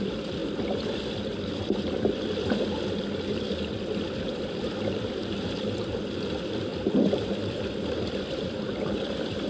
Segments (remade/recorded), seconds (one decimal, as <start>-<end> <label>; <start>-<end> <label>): 0.0-9.5 remade